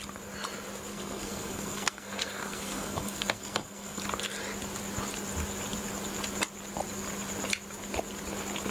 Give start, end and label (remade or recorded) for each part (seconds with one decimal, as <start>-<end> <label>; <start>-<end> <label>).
0.0-0.9 recorded; 0.9-4.0 remade; 4.0-8.7 recorded